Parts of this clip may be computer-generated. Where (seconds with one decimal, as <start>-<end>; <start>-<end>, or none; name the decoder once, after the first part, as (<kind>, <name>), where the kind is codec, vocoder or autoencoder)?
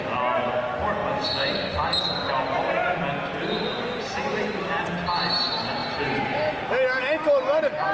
1.0-1.7 (vocoder, BigVGAN v2); 3.3-4.8; 5.8-6.7